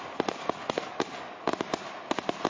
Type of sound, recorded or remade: recorded